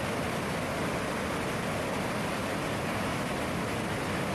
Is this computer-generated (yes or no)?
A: no